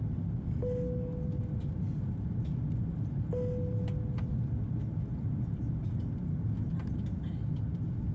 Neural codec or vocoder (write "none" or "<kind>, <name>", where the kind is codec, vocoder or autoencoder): none